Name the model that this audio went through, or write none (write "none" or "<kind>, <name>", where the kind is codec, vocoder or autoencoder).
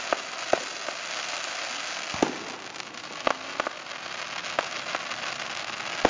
none